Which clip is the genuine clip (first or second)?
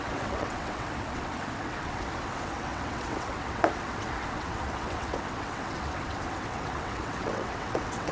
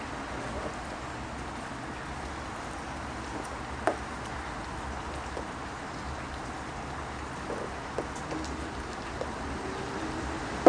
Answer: second